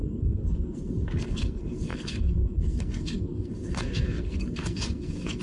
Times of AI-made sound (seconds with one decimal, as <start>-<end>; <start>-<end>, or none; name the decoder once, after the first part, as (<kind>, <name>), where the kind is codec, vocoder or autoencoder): 0.0-5.4 (codec, SNAC)